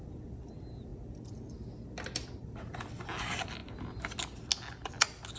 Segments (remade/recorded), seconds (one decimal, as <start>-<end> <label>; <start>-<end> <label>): 0.0-5.4 recorded